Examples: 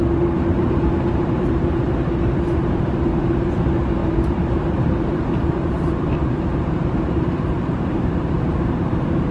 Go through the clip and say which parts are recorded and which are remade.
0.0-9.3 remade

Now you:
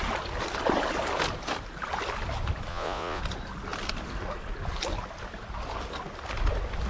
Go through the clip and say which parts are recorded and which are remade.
0.0-2.7 recorded; 2.7-3.2 remade; 3.2-6.9 recorded